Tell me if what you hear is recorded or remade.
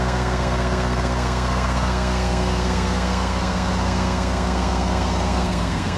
remade